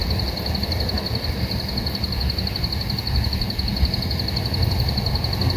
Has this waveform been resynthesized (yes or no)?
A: no